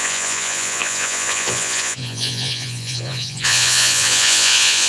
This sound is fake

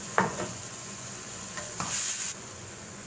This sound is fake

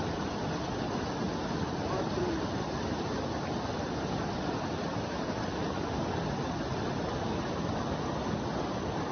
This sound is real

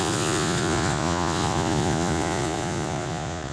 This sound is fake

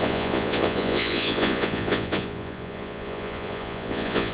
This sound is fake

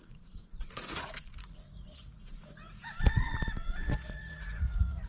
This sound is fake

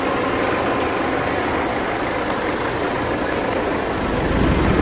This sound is real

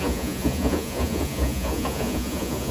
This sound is fake